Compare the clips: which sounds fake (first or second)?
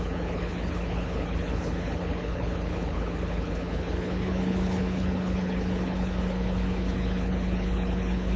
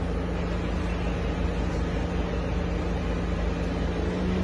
first